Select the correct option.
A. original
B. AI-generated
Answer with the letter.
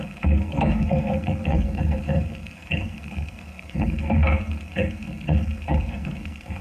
B